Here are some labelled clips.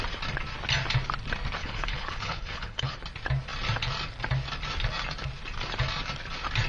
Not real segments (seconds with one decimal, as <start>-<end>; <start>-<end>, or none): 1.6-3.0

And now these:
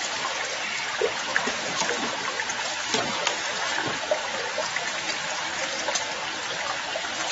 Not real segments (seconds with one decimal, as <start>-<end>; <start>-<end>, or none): 1.3-1.9; 4.6-5.5

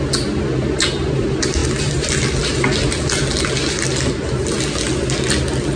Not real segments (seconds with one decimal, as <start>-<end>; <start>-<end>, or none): none

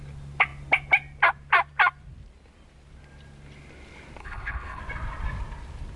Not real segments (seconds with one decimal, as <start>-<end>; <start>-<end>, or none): 4.2-4.8

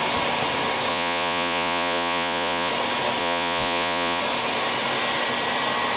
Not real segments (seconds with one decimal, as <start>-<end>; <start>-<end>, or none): 0.9-2.7; 3.2-4.2